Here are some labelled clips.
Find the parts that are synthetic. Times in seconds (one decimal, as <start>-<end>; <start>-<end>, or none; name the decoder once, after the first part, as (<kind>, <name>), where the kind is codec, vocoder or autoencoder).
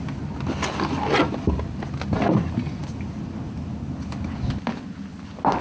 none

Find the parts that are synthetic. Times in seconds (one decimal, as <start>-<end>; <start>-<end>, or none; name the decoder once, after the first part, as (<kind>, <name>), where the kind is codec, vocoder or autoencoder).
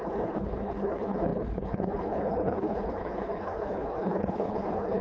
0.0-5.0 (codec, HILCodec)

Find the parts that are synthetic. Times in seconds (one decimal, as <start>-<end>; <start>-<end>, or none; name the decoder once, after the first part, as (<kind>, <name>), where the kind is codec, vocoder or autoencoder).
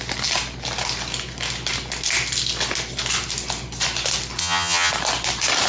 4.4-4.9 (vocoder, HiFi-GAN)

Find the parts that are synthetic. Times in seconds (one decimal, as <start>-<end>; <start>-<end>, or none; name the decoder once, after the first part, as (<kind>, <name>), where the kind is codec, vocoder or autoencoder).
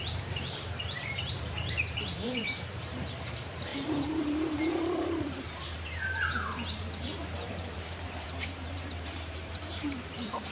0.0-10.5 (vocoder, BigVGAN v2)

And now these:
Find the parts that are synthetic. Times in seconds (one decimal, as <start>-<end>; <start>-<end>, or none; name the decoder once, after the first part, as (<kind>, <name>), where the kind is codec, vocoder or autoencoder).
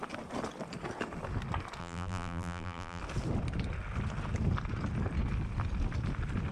1.8-3.0 (vocoder, BigVGAN v2)